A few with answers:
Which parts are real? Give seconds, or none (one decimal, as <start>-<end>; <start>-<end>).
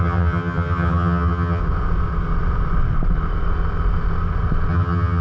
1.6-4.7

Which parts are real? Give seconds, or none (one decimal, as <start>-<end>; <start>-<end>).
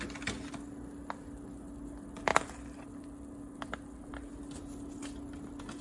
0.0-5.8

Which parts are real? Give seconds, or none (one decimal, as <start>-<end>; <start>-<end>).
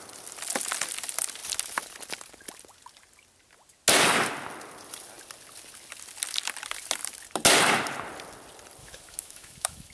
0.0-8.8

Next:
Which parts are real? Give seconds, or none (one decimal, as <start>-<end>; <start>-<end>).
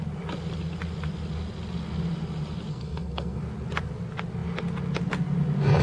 0.0-2.7; 3.4-5.8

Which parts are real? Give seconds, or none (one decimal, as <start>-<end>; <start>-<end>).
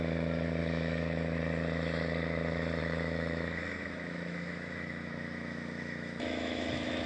0.0-0.6; 1.4-2.8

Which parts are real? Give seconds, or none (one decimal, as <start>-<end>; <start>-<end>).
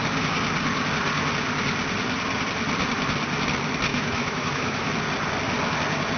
0.0-3.9; 4.9-6.2